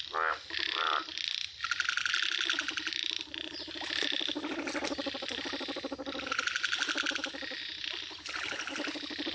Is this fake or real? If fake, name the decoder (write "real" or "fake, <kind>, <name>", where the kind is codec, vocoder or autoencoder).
real